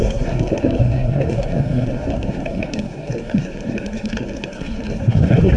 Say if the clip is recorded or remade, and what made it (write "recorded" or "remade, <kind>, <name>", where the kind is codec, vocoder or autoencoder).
remade, codec, SNAC